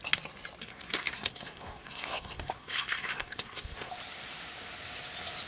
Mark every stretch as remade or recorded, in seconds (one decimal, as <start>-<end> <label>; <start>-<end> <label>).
0.0-0.6 recorded; 0.6-3.9 remade; 3.9-5.5 recorded